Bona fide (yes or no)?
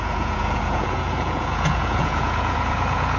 no